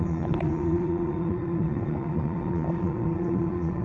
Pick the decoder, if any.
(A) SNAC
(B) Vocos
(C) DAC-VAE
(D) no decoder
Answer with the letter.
B